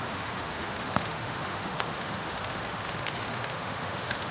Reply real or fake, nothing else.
fake